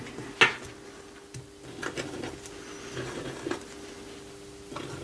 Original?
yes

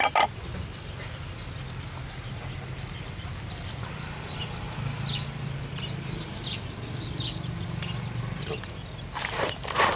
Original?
yes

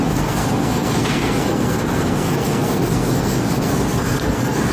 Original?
no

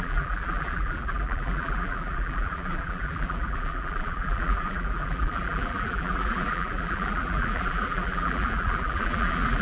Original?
no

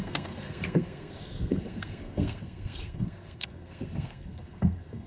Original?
no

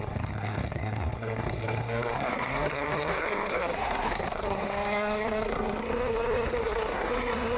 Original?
no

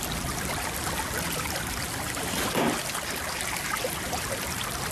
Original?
yes